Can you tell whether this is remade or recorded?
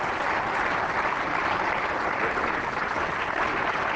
recorded